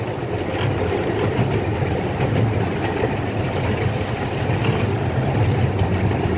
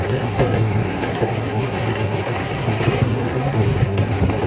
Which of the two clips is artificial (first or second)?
second